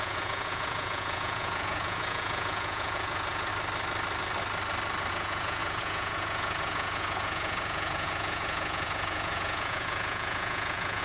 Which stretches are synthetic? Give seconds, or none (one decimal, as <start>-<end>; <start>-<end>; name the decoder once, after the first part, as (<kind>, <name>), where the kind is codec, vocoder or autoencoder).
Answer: 0.0-3.5 (vocoder, Vocos); 5.1-11.0

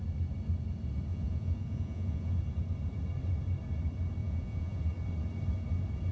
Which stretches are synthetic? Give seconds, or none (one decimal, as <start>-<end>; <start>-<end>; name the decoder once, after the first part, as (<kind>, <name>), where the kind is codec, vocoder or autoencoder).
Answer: 1.1-2.4 (vocoder, Vocos); 4.2-4.8

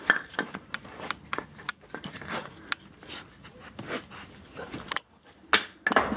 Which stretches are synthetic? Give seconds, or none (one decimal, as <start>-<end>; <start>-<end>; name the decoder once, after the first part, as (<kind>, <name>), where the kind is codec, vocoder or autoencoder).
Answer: none

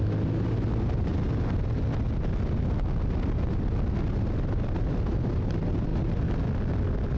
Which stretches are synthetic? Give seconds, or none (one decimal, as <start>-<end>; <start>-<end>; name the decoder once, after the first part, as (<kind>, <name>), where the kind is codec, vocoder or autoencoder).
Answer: none

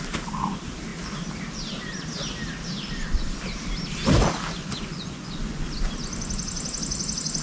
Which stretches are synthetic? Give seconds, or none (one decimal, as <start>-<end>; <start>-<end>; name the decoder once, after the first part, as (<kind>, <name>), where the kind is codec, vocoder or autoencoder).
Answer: 4.6-5.7 (vocoder, Vocos)